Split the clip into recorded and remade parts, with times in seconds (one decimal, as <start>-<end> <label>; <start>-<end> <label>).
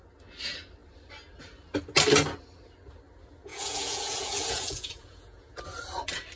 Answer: 0.0-3.5 recorded; 3.5-5.6 remade; 5.6-6.4 recorded